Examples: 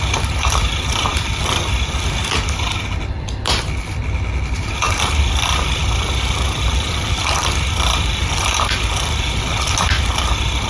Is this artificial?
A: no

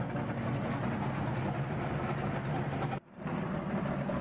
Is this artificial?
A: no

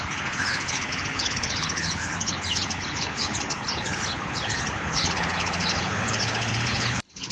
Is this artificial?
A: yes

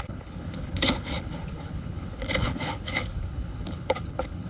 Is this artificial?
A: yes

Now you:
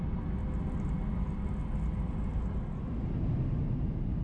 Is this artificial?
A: no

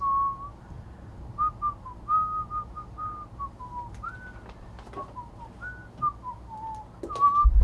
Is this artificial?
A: no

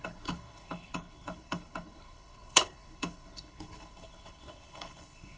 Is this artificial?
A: yes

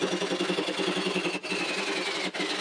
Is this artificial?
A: no